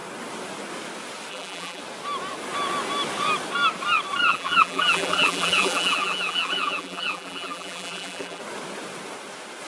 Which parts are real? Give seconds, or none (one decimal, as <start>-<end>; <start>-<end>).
0.0-1.3; 1.8-4.3; 8.4-9.7